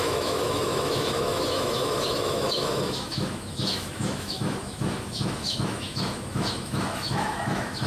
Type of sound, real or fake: fake